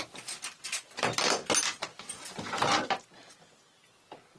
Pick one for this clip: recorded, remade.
recorded